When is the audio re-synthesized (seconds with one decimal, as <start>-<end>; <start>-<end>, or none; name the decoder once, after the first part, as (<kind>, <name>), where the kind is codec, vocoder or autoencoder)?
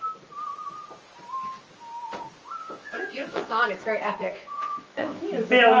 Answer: 2.6-3.6 (vocoder, Vocos); 4.2-5.2